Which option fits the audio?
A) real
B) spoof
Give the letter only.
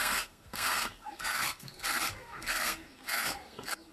B